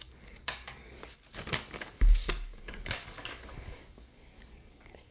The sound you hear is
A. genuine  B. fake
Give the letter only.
B